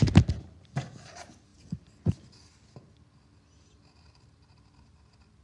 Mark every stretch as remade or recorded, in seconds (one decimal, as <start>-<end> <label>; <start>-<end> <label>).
0.0-5.4 recorded